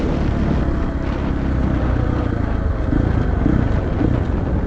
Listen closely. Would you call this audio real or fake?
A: real